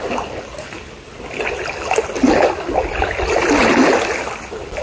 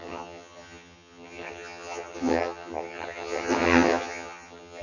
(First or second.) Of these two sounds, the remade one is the second